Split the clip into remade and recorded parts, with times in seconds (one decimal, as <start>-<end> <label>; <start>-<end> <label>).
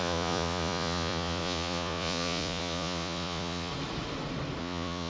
0.0-3.7 remade; 3.7-4.6 recorded; 4.6-5.1 remade